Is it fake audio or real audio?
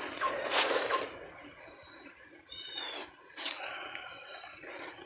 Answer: fake